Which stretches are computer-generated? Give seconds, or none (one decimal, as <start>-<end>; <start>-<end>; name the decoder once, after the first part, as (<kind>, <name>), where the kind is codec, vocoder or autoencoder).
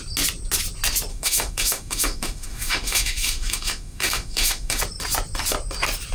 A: 1.1-4.8 (autoencoder, DAC-VAE)